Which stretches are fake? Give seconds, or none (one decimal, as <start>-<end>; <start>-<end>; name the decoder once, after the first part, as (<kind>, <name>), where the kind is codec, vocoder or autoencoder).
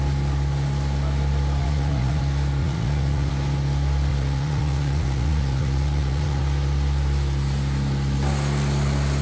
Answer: 1.6-2.2 (vocoder, Vocos); 2.6-3.3; 4.1-6.4